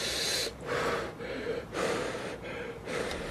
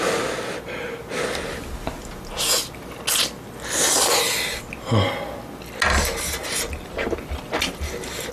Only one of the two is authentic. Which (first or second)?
second